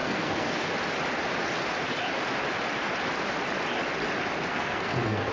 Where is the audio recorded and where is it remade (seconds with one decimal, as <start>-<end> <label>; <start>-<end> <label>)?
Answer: 0.0-0.7 remade; 0.7-4.5 recorded; 4.5-5.3 remade